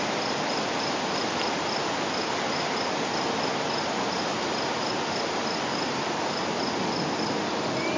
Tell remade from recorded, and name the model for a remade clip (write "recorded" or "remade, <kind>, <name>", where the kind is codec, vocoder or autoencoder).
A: recorded